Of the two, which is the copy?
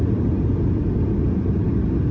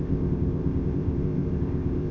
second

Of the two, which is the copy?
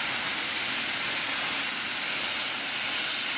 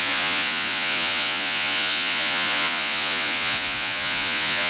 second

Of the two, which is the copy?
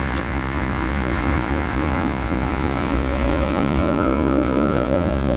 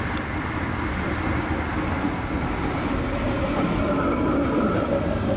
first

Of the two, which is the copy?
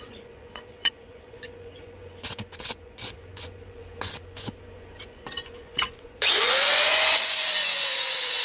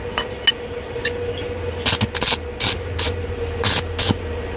first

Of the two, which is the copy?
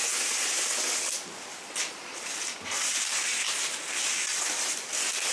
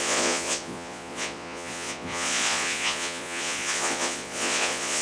second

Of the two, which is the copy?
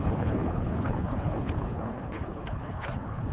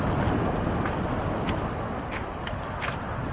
first